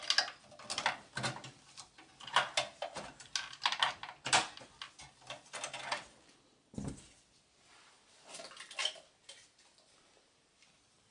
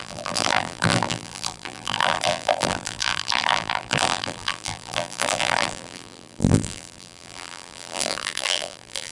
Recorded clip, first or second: first